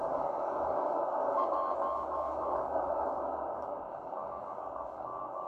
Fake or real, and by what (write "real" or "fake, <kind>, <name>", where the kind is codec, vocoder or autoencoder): fake, codec, DAC